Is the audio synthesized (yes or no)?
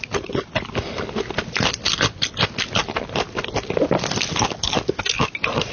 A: no